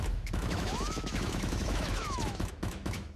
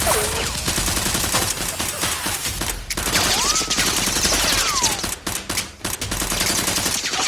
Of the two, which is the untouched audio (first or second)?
second